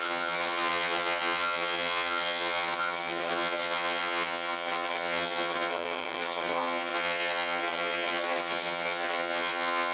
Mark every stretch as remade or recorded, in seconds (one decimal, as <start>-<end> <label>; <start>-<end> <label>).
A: 0.0-9.9 remade